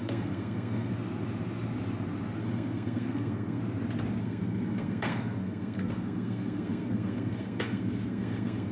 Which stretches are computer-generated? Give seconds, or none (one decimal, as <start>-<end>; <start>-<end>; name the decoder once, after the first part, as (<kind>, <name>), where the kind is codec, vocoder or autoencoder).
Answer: 0.0-0.9 (codec, SNAC); 2.4-3.6; 4.2-8.7